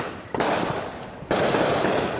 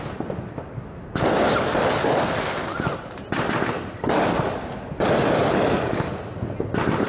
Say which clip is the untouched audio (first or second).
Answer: second